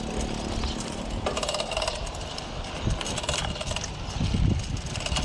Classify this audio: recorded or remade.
recorded